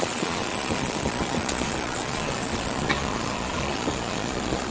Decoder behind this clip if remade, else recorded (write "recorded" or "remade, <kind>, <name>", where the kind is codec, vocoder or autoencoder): remade, vocoder, Vocos